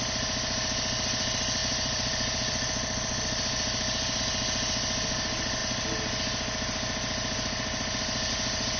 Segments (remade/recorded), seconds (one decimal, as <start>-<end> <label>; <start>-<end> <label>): 0.0-1.6 recorded; 1.6-4.2 remade; 4.2-8.8 recorded